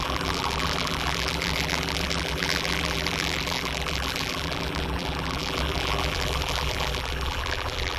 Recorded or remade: remade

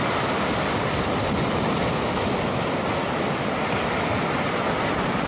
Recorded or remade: recorded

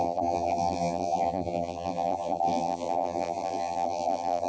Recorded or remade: remade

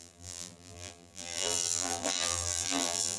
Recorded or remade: remade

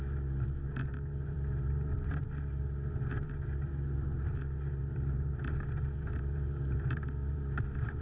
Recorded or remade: remade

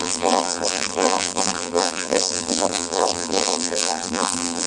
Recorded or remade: remade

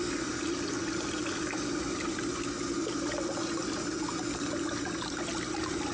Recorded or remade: recorded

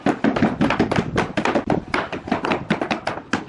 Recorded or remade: recorded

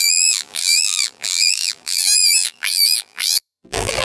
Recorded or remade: remade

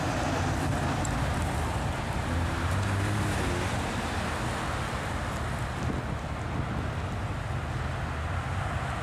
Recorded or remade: recorded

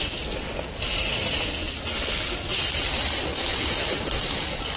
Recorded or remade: remade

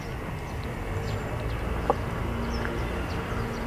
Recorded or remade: recorded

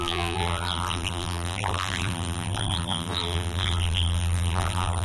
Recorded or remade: remade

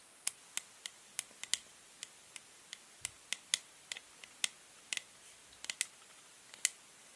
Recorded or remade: recorded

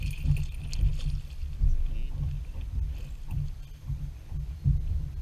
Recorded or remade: recorded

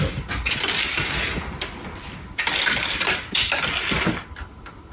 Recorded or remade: remade